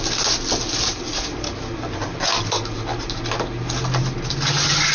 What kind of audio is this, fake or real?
real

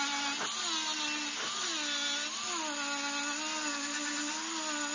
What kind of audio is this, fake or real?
real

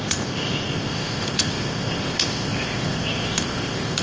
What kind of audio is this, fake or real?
fake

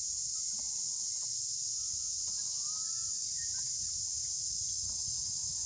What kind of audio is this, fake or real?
real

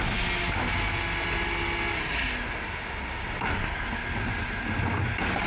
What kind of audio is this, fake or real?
real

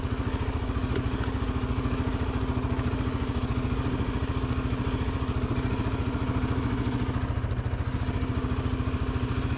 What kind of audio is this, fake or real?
real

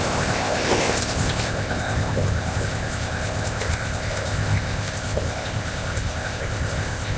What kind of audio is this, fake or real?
fake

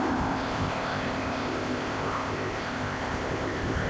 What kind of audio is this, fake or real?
fake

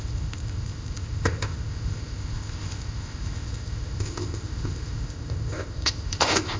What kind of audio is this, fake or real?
fake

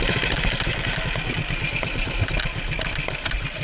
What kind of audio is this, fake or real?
real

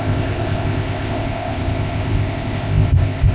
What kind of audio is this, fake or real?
fake